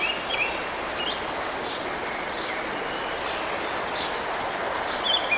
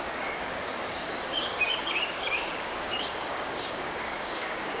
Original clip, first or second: first